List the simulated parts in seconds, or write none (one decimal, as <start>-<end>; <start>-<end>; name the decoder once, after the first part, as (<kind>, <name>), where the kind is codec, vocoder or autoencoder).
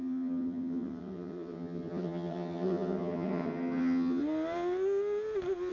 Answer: 0.0-4.2 (vocoder, HiFi-GAN)